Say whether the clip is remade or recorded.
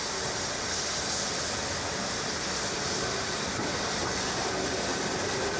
recorded